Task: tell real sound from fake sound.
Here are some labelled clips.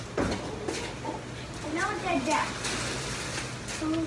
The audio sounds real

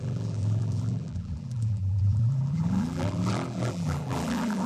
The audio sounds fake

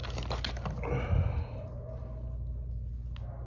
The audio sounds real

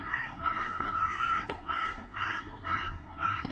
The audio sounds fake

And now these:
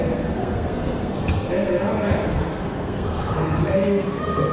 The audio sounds fake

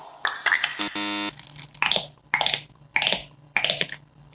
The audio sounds real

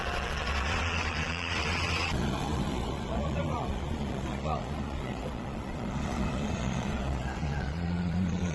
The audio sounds fake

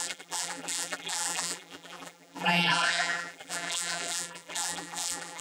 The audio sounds fake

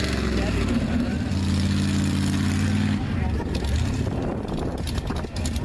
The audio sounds real